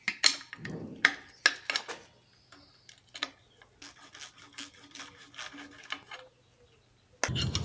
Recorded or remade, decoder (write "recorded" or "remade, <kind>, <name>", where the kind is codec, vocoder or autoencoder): recorded